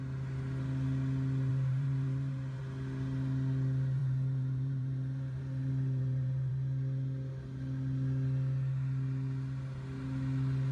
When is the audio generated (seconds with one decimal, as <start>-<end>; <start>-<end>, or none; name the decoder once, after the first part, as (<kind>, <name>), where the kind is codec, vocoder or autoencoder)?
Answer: 1.5-2.6 (vocoder, BigVGAN v2); 4.0-6.5